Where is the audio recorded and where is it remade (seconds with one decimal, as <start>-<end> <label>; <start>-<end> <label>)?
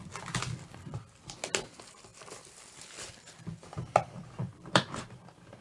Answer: 0.0-2.1 recorded; 2.1-5.6 remade